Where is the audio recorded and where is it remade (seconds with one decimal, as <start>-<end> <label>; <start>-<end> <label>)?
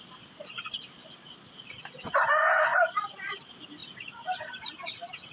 0.0-2.7 recorded; 2.7-3.3 remade; 3.3-3.8 recorded; 3.8-4.7 remade; 4.7-5.3 recorded